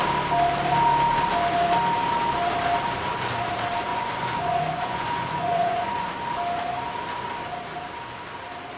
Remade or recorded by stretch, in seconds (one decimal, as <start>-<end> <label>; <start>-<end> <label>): 0.0-3.9 recorded; 3.9-6.1 remade; 6.1-8.8 recorded